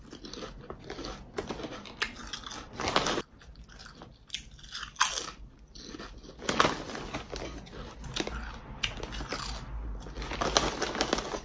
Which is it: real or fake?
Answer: real